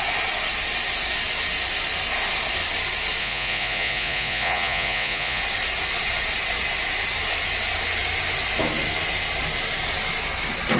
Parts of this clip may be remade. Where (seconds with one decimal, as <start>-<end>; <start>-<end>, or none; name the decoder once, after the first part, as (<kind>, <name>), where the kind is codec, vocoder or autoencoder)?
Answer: 3.2-5.4 (vocoder, Vocos)